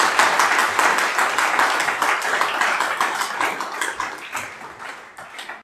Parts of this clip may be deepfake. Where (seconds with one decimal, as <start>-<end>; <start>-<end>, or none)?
0.6-4.0; 4.9-5.6